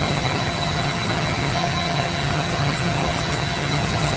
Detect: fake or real fake